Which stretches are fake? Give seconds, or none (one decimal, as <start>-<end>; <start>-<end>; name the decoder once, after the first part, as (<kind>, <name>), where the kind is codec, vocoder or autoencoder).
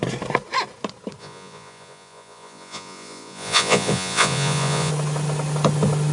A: 1.2-4.9 (vocoder, Vocos)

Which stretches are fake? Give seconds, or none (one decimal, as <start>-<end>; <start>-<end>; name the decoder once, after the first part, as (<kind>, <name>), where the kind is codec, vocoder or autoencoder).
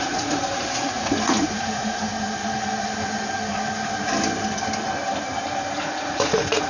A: 0.0-2.1 (vocoder, Vocos); 5.8-6.7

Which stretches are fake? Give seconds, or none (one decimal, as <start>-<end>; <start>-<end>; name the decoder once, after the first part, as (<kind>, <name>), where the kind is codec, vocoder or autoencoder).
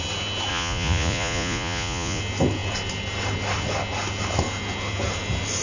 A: 0.5-2.2 (vocoder, Vocos)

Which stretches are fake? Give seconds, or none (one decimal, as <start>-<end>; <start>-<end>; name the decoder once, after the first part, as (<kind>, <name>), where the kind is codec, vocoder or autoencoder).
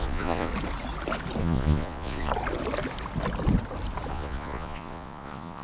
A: 0.0-0.5 (vocoder, Vocos); 1.4-2.3; 4.1-5.6